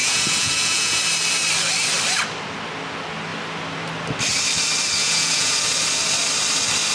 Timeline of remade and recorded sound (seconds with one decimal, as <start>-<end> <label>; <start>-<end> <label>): 0.0-1.0 remade; 1.0-5.0 recorded; 5.0-5.5 remade; 5.5-6.9 recorded